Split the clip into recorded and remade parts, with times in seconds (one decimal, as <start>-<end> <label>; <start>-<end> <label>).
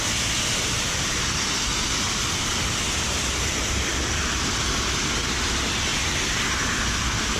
0.0-1.7 recorded; 1.7-4.2 remade; 4.2-7.4 recorded